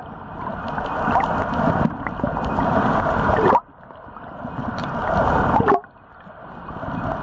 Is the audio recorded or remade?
recorded